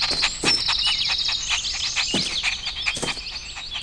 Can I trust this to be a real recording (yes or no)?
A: yes